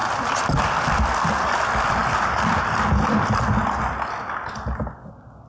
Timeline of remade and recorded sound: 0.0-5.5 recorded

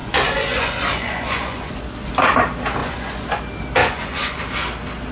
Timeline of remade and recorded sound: 0.0-1.8 remade; 1.8-2.8 recorded; 2.8-3.4 remade; 3.4-3.8 recorded; 3.8-4.4 remade; 4.4-5.1 recorded

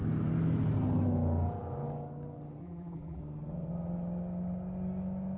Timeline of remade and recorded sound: 0.0-2.6 recorded; 2.6-3.2 remade; 3.2-5.4 recorded

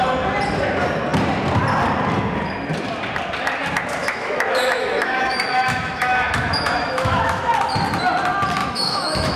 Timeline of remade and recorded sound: 0.0-4.0 recorded; 4.0-7.5 remade; 7.5-8.6 recorded; 8.6-9.4 remade

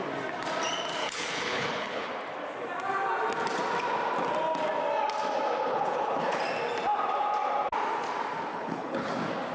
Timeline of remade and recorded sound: 0.0-1.0 recorded; 1.0-2.1 remade; 2.1-5.7 recorded; 5.7-6.4 remade; 6.4-8.5 recorded; 8.5-9.1 remade; 9.1-9.5 recorded